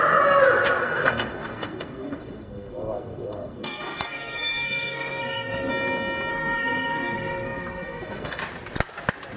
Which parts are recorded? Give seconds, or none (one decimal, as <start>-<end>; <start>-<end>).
0.0-0.8; 5.7-6.3; 8.4-9.4